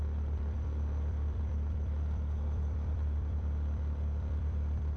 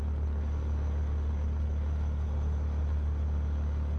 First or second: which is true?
second